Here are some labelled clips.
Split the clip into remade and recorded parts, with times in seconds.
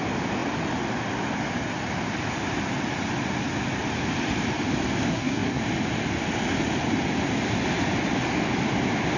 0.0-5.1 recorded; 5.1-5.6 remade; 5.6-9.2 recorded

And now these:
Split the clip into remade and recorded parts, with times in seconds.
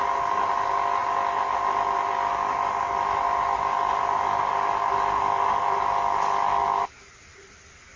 0.0-8.0 recorded